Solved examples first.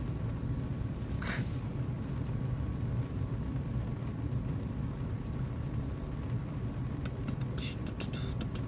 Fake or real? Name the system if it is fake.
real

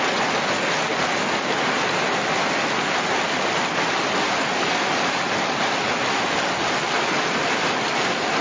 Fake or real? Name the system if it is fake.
real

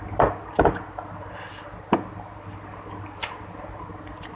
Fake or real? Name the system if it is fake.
real